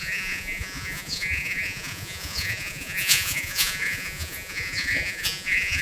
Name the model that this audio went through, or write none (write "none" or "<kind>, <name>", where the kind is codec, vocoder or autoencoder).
vocoder, Vocos